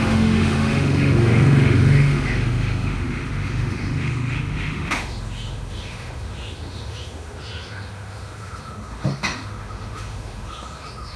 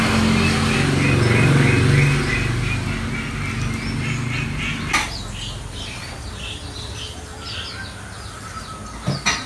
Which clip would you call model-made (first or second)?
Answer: first